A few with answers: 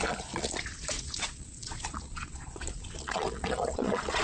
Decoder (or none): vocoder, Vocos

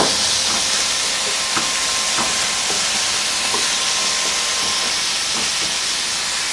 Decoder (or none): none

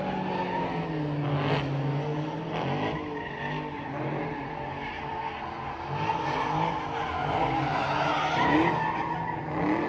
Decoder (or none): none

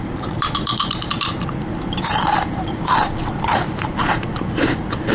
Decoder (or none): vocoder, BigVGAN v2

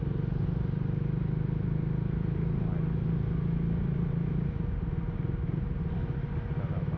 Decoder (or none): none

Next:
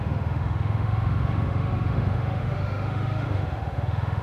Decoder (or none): autoencoder, DAC-VAE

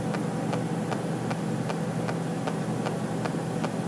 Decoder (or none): none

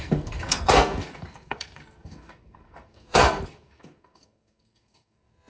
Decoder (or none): codec, SNAC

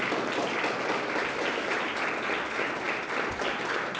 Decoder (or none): none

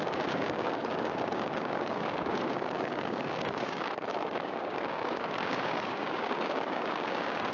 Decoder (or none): codec, DAC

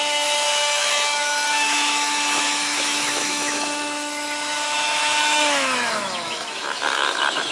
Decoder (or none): autoencoder, DAC-VAE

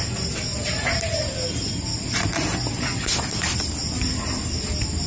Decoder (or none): none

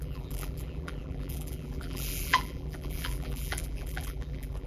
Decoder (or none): vocoder, BigVGAN v2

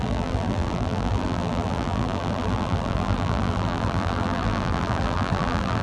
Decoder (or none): vocoder, BigVGAN v2